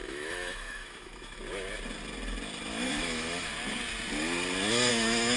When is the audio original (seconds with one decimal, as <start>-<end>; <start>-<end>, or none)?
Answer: 1.4-2.7; 3.5-4.9